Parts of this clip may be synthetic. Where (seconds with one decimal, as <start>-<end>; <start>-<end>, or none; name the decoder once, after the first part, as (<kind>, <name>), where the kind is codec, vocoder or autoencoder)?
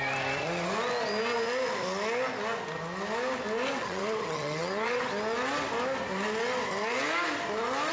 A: 3.7-5.0 (vocoder, WaveNeXt)